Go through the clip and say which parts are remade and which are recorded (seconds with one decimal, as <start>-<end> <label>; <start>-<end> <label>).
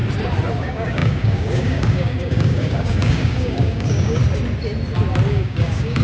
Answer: 0.0-0.6 recorded; 0.6-4.2 remade; 4.2-5.3 recorded; 5.3-6.0 remade